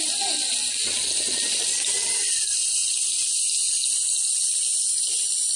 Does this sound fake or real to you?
real